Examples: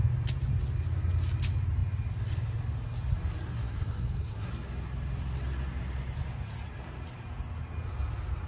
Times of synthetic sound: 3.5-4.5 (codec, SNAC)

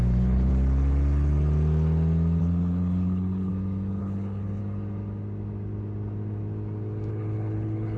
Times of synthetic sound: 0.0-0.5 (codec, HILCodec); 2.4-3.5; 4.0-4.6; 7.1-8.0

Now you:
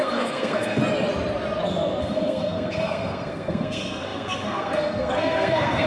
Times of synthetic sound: 0.0-0.8 (codec, SNAC); 2.0-5.9

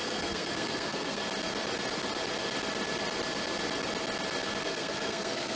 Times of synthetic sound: 0.0-1.2 (codec, SNAC); 4.6-5.6

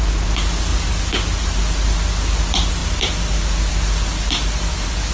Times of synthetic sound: none

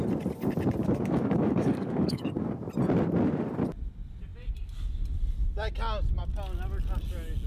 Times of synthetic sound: 0.8-2.6 (codec, DAC)

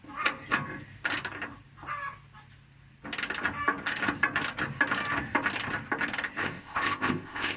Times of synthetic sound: 6.4-7.6 (codec, ZipCodec)

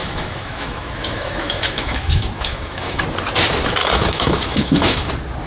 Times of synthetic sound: 0.0-3.0 (autoencoder, DAC-VAE); 3.8-5.1